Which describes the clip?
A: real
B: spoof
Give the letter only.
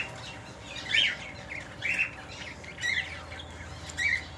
A